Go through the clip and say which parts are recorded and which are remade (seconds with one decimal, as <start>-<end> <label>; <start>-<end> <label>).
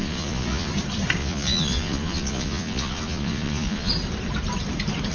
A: 0.0-0.7 remade; 0.7-1.2 recorded; 1.2-3.9 remade; 3.9-5.1 recorded